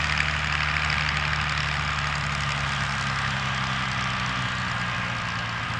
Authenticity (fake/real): real